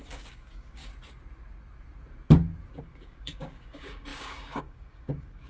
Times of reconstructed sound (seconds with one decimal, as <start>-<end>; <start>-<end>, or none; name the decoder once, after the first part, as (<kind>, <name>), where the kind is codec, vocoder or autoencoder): 0.0-0.9 (codec, DAC); 2.8-5.5